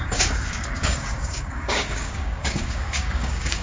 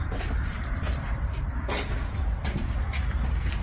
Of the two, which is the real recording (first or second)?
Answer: second